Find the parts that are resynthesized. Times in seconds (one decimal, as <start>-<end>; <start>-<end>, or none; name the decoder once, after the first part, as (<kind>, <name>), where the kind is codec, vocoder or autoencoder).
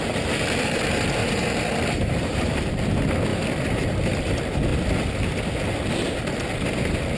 1.2-2.7 (vocoder, BigVGAN v2)